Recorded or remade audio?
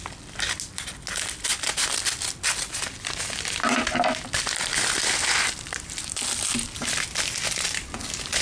recorded